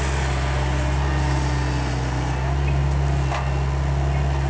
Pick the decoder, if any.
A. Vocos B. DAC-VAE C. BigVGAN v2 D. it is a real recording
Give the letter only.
D